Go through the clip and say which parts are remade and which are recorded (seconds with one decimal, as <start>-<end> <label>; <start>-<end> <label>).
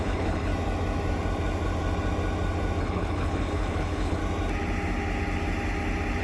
0.0-0.5 remade; 0.5-2.8 recorded; 2.8-4.2 remade; 4.2-6.2 recorded